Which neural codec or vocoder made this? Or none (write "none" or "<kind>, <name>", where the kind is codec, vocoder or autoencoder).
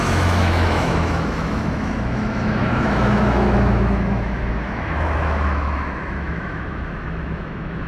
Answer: autoencoder, DAC-VAE